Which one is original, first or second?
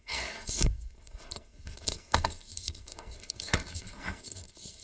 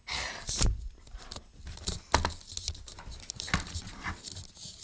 second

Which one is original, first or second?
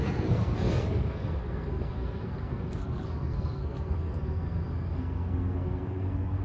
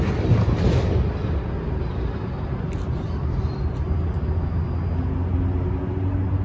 second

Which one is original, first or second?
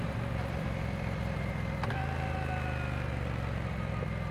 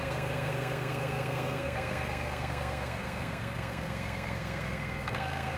first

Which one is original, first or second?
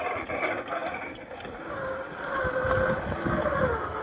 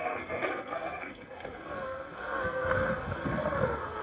first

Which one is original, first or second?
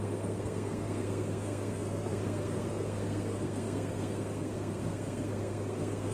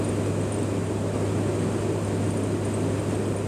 second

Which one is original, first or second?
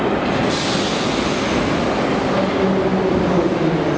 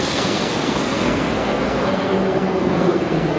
first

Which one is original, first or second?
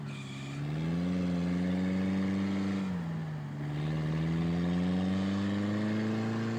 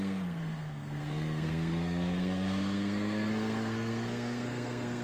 first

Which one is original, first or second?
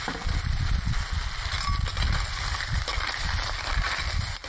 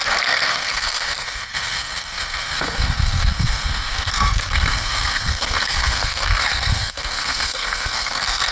first